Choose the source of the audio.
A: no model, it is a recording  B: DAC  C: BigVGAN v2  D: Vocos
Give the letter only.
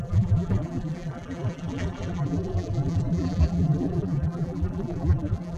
C